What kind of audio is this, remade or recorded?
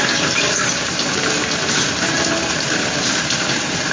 remade